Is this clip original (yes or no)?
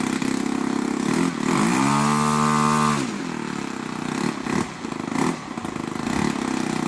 yes